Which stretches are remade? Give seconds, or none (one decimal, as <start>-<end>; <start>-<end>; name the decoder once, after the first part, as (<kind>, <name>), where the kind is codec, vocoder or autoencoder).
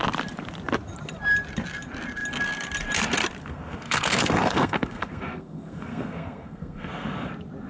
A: 3.4-7.3 (codec, SNAC)